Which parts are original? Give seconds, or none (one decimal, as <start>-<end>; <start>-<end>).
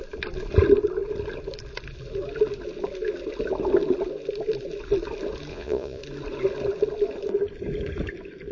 0.0-5.5; 6.0-8.5